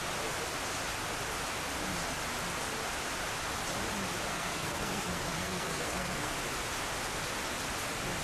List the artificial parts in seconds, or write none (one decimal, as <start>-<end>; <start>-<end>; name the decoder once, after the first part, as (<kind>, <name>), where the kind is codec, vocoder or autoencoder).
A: 4.3-6.3 (codec, SNAC)